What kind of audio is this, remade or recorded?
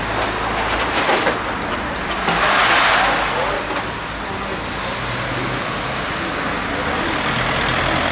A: recorded